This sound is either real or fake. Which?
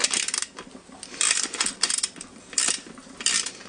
real